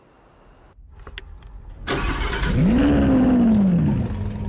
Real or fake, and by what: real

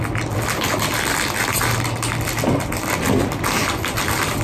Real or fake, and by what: real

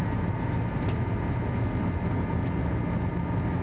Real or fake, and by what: real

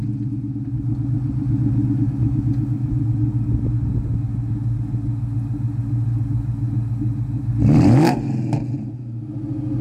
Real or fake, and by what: real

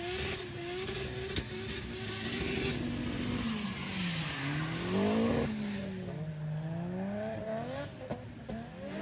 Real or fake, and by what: real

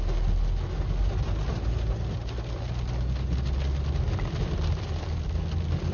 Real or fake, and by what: real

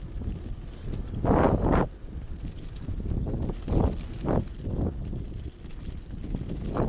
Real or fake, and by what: real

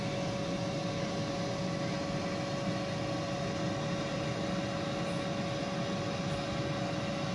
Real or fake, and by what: real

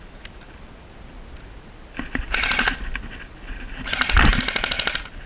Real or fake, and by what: real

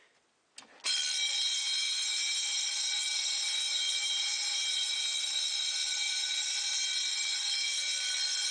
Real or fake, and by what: real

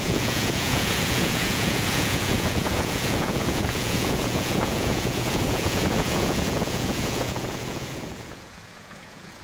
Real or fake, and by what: fake, vocoder, Vocos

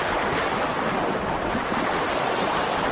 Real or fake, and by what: real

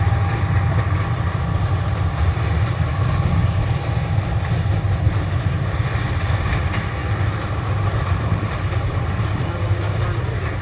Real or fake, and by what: real